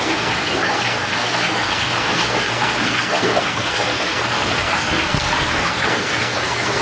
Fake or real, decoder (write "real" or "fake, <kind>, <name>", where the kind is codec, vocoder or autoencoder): fake, codec, SNAC